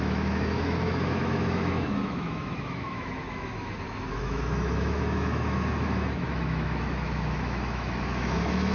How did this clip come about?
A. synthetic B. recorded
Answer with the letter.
A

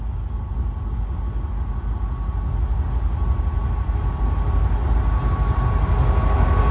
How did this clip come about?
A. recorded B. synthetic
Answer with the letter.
A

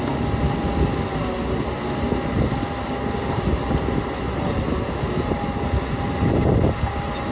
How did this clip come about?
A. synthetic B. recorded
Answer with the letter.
B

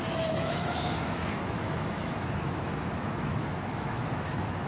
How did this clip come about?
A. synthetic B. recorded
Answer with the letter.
A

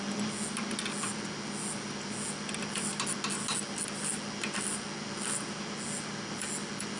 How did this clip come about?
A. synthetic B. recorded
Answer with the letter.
B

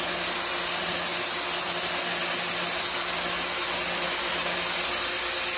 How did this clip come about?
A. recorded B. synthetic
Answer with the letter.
A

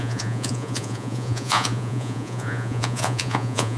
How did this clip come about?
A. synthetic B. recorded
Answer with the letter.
A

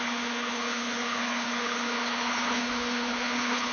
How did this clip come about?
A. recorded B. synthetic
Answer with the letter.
B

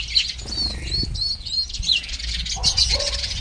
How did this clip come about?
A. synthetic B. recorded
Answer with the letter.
B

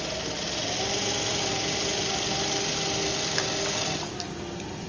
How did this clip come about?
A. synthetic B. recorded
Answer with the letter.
B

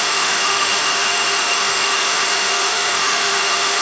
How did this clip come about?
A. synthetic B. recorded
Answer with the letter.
A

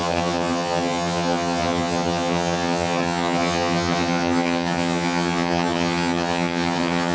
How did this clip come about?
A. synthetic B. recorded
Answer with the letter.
A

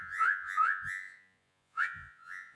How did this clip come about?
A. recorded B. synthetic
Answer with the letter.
B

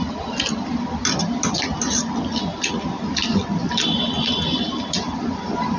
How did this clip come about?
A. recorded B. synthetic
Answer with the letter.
A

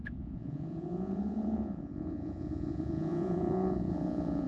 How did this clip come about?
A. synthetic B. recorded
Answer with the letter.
A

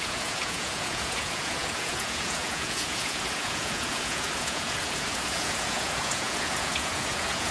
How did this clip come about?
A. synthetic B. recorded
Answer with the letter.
A